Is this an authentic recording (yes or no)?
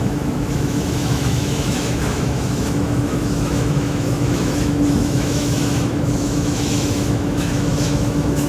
no